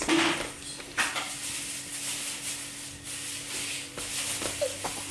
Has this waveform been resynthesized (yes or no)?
no